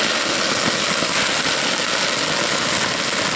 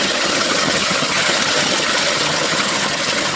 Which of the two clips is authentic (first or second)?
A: first